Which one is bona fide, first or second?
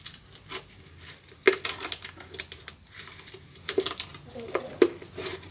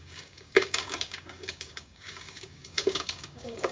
first